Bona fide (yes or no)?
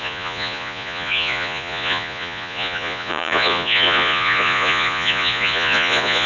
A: no